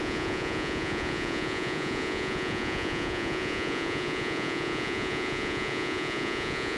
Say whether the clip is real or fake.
fake